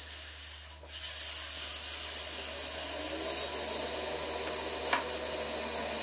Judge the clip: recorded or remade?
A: recorded